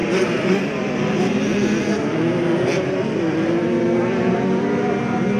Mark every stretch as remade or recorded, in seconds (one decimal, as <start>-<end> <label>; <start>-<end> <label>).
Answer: 0.0-5.4 recorded